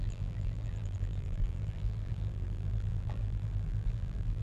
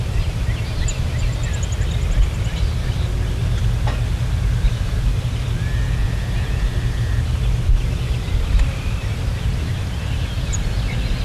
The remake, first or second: first